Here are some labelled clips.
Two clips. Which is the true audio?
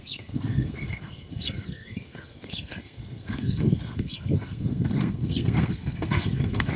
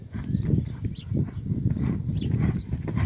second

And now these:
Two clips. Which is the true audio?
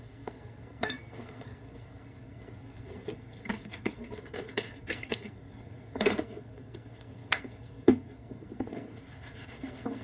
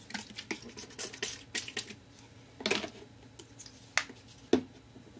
second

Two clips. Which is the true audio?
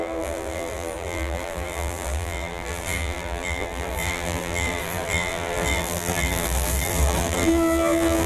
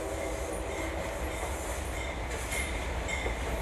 second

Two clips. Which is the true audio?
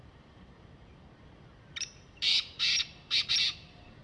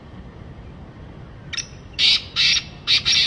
second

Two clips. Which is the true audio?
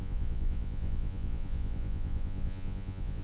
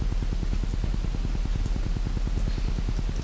second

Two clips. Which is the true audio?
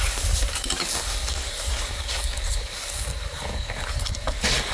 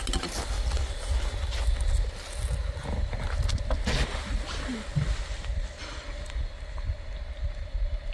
second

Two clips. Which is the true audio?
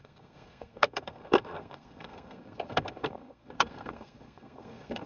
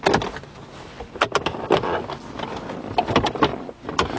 second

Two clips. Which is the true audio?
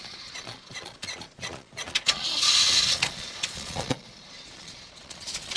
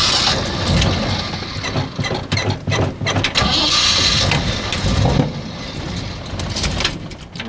second